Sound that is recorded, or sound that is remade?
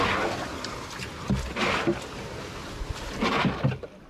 recorded